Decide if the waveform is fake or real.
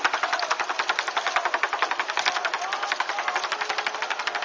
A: real